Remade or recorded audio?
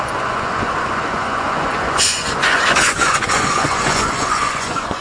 remade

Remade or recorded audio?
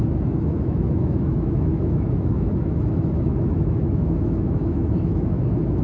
remade